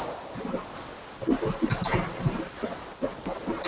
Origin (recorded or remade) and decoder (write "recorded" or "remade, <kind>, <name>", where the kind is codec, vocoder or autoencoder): recorded